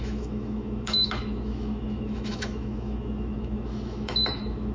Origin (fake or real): fake